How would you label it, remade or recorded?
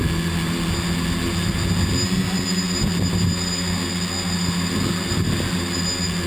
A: recorded